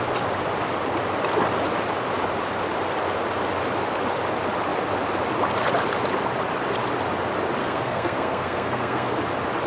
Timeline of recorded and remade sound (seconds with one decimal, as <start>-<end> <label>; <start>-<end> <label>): 0.0-7.6 recorded; 7.6-9.1 remade; 9.1-9.7 recorded